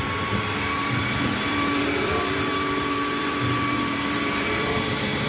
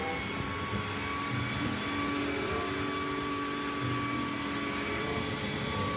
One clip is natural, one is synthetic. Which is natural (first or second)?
second